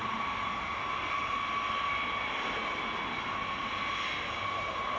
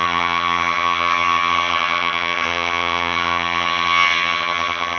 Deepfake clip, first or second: second